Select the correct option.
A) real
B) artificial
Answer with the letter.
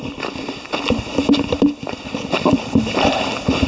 A